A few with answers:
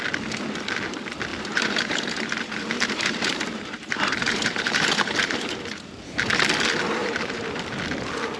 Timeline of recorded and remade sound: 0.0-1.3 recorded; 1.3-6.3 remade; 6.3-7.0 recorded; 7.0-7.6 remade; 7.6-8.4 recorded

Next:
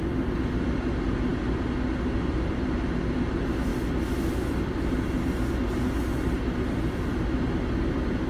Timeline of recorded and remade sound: 0.0-8.3 recorded